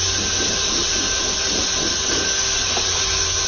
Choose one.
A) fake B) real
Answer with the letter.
B